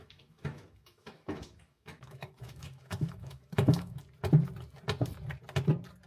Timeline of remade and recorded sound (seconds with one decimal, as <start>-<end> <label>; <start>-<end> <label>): 0.0-4.0 remade; 4.0-6.1 recorded